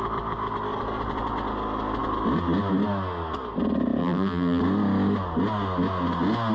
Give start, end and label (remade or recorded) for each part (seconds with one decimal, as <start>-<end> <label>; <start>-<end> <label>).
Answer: 0.0-4.0 recorded; 4.0-4.6 remade; 4.6-6.5 recorded